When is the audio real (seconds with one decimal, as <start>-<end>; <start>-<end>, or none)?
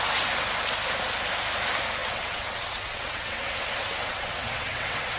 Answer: 0.0-2.0